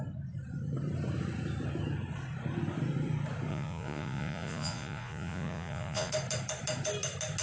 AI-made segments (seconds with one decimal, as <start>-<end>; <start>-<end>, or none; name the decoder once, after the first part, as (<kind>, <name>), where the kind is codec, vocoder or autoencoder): 3.5-6.1 (vocoder, Vocos)